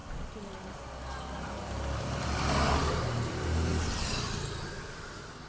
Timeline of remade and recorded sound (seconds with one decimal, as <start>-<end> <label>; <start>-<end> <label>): 0.0-3.3 recorded; 3.3-3.7 remade; 3.7-4.8 recorded; 4.8-5.5 remade

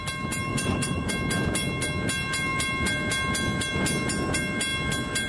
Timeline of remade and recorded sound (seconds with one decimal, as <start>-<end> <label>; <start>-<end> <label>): 0.0-0.5 recorded; 0.5-1.1 remade; 1.1-5.3 recorded

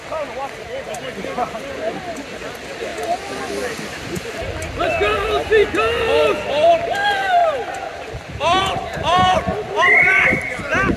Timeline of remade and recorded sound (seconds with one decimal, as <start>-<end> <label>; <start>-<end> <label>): 0.0-11.0 recorded

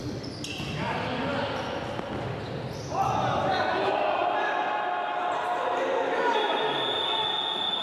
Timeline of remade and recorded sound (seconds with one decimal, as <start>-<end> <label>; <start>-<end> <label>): 0.0-7.8 recorded

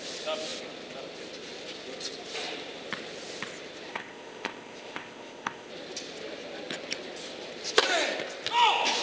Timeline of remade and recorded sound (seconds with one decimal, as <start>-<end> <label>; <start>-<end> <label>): 0.0-3.9 recorded; 3.9-5.7 remade; 5.7-9.0 recorded

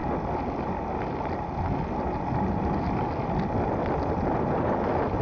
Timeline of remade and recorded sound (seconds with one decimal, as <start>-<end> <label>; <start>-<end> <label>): 0.0-5.2 recorded